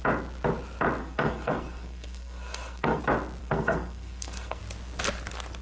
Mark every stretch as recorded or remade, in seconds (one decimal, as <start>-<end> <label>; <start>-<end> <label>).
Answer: 0.0-1.0 recorded; 1.0-3.0 remade; 3.0-3.4 recorded; 3.4-4.6 remade; 4.6-5.6 recorded